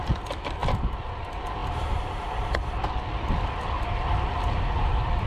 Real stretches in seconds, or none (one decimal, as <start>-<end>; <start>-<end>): 0.0-5.3